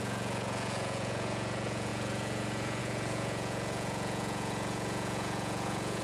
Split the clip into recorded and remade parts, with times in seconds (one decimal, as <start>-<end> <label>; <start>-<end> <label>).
0.0-6.0 remade